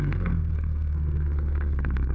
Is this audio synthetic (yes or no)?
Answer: yes